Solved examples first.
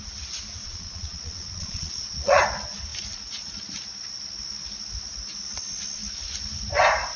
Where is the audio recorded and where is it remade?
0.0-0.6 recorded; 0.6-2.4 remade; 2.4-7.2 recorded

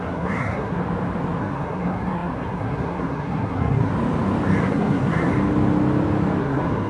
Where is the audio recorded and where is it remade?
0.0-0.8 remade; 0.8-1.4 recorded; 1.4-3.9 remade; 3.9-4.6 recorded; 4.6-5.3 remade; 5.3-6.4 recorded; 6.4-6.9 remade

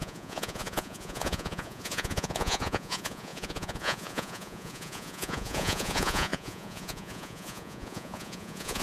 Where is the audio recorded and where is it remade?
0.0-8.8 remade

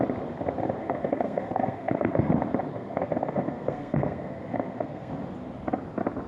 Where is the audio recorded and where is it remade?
0.0-0.8 recorded; 0.8-2.3 remade; 2.3-2.7 recorded; 2.7-5.1 remade; 5.1-6.3 recorded

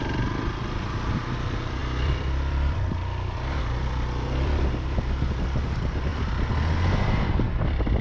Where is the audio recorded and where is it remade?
0.0-6.1 remade; 6.1-8.0 recorded